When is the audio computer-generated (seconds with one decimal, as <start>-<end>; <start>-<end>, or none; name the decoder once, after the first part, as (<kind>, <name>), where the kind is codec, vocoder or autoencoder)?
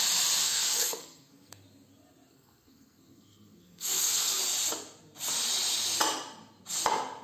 0.4-1.5 (codec, SNAC); 2.3-4.4